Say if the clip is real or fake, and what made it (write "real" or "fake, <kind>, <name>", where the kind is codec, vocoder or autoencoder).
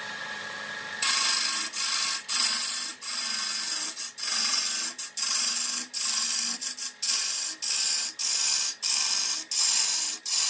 real